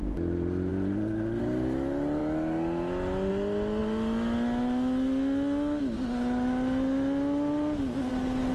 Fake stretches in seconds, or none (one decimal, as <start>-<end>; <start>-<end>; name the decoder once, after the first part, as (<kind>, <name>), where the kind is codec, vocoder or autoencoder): none